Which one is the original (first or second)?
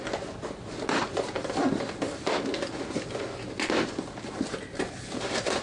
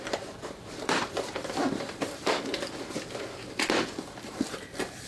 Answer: first